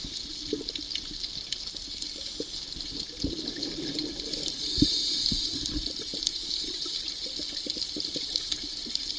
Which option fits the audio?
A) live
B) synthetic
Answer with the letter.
A